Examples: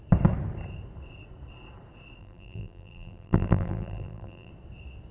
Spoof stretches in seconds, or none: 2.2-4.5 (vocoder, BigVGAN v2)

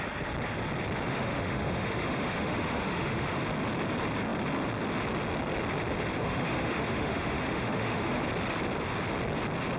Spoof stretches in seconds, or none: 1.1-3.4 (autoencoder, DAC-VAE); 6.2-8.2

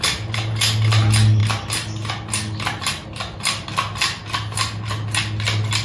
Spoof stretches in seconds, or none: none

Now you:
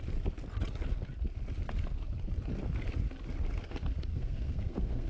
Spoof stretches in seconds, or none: 4.1-5.1 (codec, SNAC)

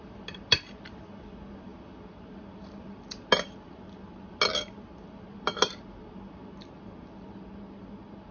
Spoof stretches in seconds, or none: none

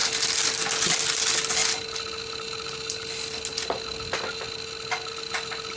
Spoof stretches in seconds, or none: none

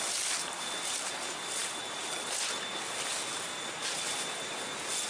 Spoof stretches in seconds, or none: none

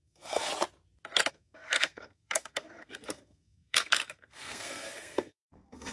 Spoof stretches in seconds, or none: 0.0-0.5 (codec, SNAC); 1.3-5.9